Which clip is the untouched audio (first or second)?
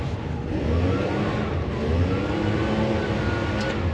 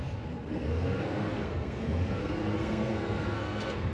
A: first